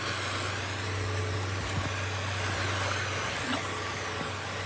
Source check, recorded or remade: recorded